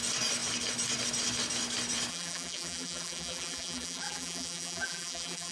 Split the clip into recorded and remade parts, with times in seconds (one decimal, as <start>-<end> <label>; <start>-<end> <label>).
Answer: 0.0-2.1 recorded; 2.1-5.5 remade